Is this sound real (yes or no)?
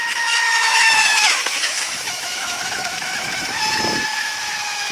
no